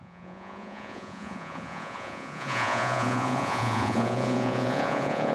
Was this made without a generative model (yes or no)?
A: no